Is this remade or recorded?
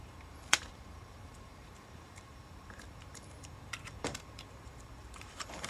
remade